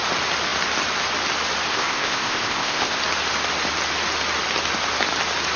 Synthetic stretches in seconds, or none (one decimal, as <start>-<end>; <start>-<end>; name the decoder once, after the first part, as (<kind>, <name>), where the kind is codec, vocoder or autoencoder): 1.7-3.0 (codec, ZipCodec)